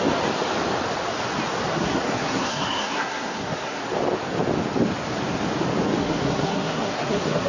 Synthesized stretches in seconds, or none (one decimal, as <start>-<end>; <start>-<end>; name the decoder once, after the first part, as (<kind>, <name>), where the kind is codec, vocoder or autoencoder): 1.7-3.8 (codec, SNAC); 6.0-7.5